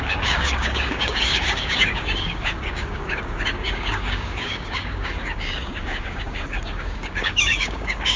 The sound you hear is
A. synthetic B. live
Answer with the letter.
A